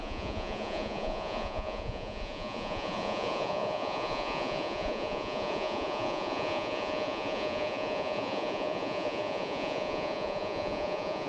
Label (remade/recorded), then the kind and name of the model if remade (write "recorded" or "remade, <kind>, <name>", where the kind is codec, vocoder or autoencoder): remade, vocoder, Vocos